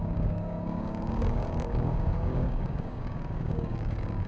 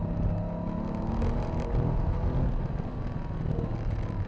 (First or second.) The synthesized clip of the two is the first